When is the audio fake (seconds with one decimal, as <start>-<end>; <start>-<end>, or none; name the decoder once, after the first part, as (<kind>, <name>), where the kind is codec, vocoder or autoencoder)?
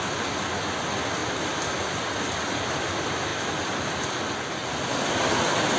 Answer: none